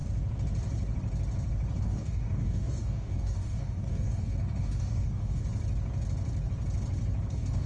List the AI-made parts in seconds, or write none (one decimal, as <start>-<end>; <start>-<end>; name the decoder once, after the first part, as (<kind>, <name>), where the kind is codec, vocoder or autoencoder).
1.8-5.4 (codec, DAC); 7.3-7.7